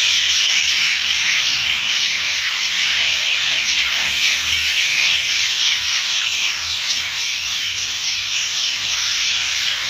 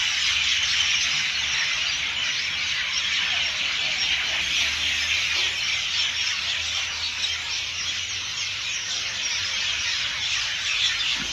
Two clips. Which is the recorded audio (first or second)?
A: second